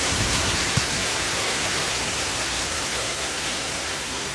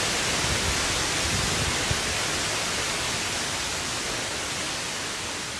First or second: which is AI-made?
first